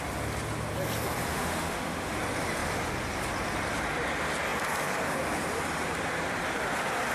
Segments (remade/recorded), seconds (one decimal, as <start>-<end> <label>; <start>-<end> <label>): 0.0-1.3 recorded; 1.3-2.2 remade; 2.2-7.1 recorded